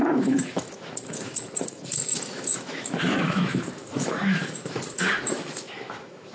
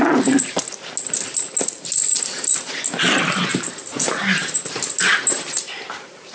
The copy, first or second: first